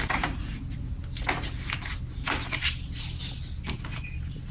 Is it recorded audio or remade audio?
recorded